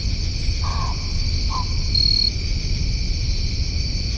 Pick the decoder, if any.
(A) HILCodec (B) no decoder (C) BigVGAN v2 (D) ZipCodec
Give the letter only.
B